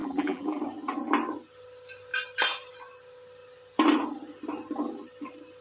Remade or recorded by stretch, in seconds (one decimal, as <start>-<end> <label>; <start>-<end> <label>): 0.0-0.6 remade; 0.6-5.6 recorded